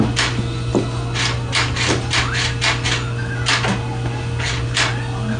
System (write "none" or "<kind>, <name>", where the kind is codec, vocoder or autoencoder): none